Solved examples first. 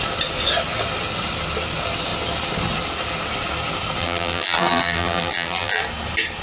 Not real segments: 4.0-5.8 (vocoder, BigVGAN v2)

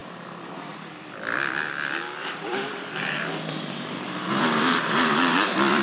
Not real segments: 0.0-0.7 (vocoder, BigVGAN v2); 2.2-5.8

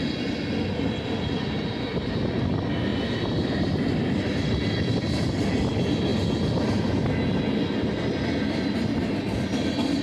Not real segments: none

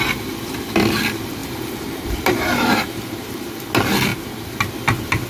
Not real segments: 1.4-3.5 (vocoder, BigVGAN v2)

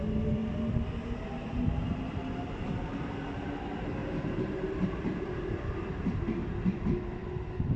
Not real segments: 4.0-5.6 (vocoder, BigVGAN v2)